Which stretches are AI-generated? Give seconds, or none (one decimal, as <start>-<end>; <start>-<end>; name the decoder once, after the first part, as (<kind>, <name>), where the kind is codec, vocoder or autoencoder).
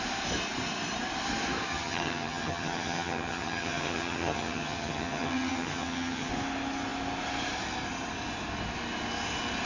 1.7-6.3 (vocoder, HiFi-GAN)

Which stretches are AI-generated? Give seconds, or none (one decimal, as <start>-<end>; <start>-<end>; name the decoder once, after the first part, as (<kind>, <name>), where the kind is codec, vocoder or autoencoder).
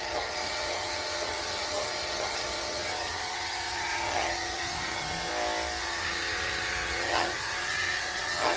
0.0-5.3 (vocoder, HiFi-GAN); 5.8-8.6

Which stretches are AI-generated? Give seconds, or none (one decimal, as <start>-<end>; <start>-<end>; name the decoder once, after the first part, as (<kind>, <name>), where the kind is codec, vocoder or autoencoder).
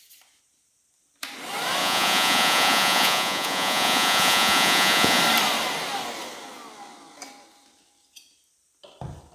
1.8-5.2 (vocoder, Vocos)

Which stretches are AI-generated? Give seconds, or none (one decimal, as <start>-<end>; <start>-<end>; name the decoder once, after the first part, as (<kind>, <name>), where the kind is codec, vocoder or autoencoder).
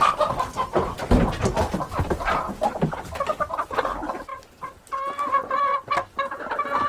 0.0-0.5 (vocoder, BigVGAN v2); 2.9-4.3; 6.4-6.9